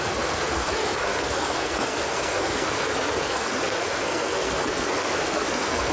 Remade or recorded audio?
remade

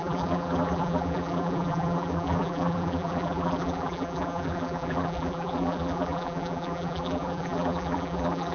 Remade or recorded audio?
remade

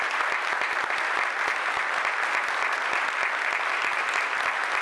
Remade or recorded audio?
recorded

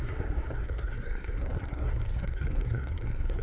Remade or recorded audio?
remade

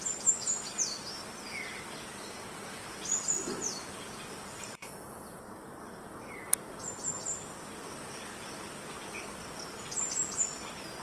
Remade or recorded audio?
recorded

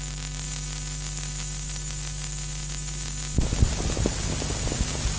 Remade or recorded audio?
recorded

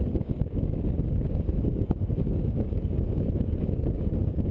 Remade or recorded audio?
remade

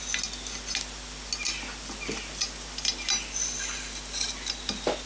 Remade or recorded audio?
recorded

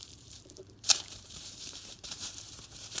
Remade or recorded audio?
remade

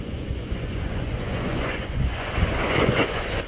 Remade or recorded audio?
remade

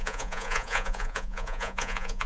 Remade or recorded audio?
remade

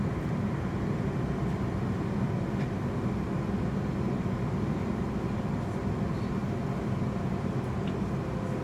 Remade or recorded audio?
recorded